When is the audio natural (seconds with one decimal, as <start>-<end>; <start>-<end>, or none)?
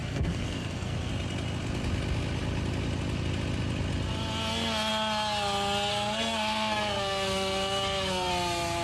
1.1-5.9; 8.3-8.8